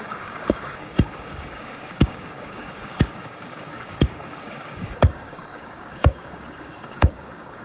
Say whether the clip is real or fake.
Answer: fake